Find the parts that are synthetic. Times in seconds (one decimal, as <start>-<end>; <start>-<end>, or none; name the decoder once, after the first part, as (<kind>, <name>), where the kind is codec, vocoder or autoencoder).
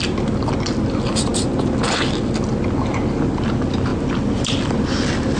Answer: none